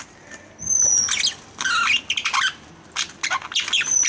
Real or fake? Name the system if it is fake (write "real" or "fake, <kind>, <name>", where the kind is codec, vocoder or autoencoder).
real